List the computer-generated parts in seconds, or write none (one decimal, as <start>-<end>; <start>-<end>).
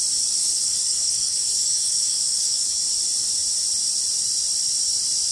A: 0.4-2.8